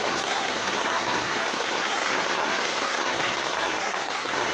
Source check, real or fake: fake